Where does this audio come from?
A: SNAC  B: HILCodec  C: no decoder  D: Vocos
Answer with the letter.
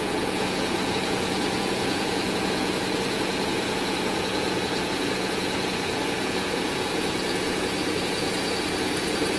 D